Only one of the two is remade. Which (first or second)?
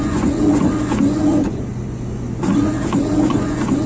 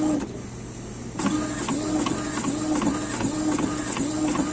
first